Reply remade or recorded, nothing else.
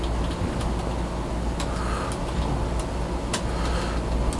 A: recorded